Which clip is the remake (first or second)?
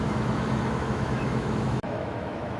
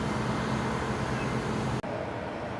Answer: first